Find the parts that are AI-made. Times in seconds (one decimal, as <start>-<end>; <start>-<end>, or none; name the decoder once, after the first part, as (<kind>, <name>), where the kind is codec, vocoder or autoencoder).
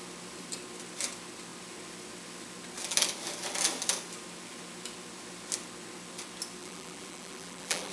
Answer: 6.6-7.9 (vocoder, BigVGAN v2)